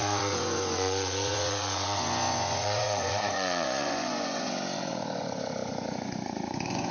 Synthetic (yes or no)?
yes